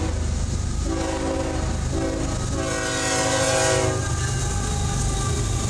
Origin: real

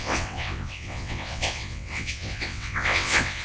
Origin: fake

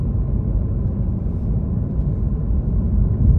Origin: fake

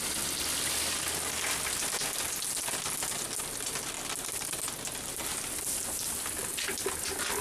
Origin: real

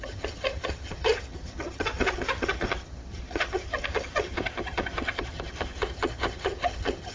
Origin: fake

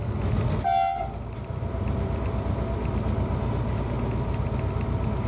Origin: real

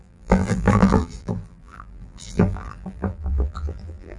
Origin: fake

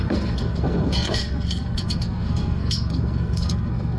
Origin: fake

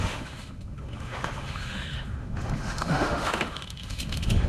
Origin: fake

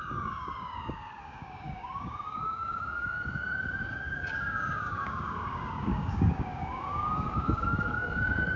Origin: fake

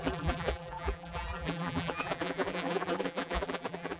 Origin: fake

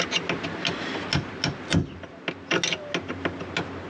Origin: real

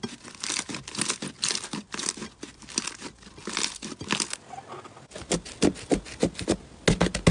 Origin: real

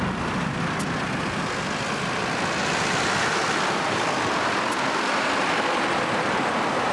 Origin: real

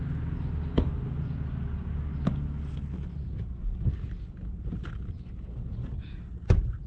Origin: real